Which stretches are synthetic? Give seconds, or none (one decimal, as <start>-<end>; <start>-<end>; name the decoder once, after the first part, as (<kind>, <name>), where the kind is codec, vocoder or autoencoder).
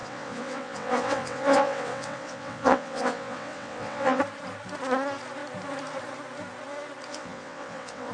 0.0-4.2 (vocoder, WaveNeXt); 7.1-8.1